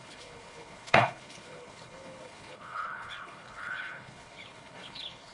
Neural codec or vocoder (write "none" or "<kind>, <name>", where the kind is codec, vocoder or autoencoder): codec, HILCodec